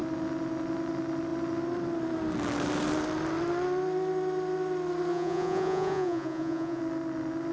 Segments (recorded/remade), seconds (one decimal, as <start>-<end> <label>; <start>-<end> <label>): 0.0-5.1 recorded; 5.1-6.8 remade; 6.8-7.5 recorded